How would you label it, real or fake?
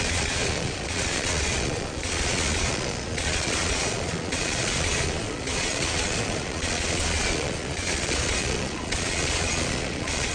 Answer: fake